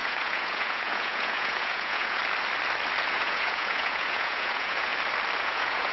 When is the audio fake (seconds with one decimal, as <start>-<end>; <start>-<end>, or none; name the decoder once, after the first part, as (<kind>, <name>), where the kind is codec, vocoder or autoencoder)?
0.0-2.2 (vocoder, Vocos); 3.1-4.9; 5.4-5.9